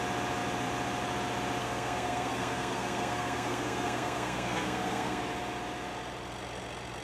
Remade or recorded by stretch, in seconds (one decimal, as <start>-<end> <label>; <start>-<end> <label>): 0.0-1.6 recorded; 1.6-5.2 remade; 5.2-7.0 recorded